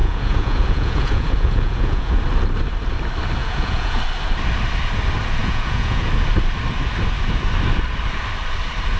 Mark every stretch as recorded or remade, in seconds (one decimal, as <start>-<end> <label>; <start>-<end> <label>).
0.0-2.2 remade; 2.2-3.4 recorded; 3.4-4.0 remade; 4.0-5.4 recorded; 5.4-6.1 remade; 6.1-9.0 recorded